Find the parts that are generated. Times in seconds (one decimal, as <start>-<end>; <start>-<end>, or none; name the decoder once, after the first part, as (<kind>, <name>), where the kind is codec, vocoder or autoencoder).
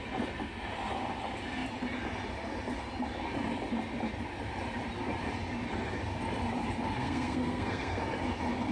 7.0-8.0 (codec, SNAC)